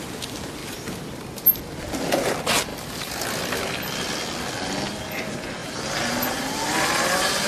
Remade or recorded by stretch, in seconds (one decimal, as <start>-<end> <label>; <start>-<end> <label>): 0.0-2.7 recorded; 2.7-3.6 remade; 3.6-5.6 recorded; 5.6-6.3 remade; 6.3-7.5 recorded